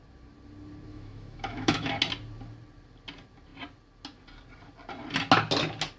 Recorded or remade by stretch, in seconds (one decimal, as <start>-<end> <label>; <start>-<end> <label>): 0.0-0.9 recorded; 0.9-1.9 remade; 1.9-6.0 recorded